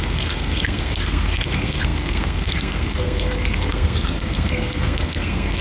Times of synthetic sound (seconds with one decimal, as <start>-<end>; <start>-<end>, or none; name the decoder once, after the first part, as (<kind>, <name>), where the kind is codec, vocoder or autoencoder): 0.0-5.6 (codec, SNAC)